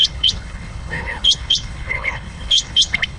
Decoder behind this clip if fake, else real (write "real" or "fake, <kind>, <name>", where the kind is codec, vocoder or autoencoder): fake, codec, HILCodec